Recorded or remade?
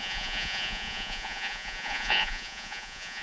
remade